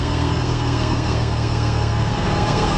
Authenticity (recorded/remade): remade